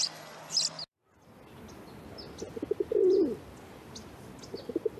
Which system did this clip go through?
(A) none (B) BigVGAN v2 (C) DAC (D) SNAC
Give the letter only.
A